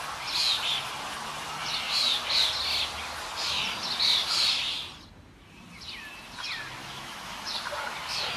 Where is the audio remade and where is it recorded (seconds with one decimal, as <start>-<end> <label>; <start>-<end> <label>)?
0.0-6.8 recorded; 6.8-7.4 remade; 7.4-8.4 recorded